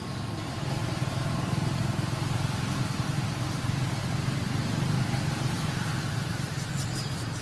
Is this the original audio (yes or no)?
yes